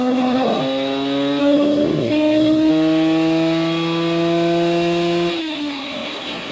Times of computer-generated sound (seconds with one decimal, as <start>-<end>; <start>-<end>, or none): 0.0-0.6; 1.4-2.7; 5.4-6.5

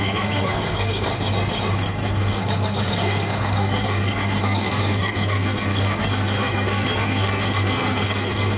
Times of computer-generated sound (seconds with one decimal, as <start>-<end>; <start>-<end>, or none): 0.0-1.1; 1.9-8.6

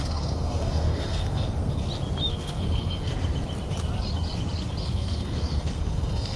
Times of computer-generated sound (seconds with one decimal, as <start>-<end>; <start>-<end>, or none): 0.0-1.8; 2.3-3.1; 4.8-6.4

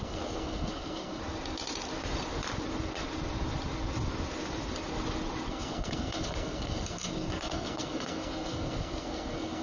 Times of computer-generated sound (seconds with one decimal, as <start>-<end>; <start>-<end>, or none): 0.0-1.2; 5.5-9.6

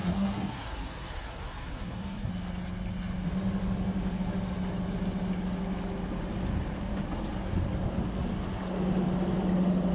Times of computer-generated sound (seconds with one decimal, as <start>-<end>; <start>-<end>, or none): 0.0-2.3

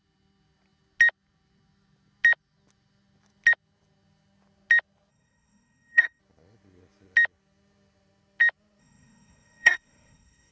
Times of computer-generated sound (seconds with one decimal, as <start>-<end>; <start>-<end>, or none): 5.1-6.2; 8.8-10.5

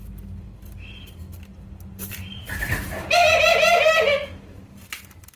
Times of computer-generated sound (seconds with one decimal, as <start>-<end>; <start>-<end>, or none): none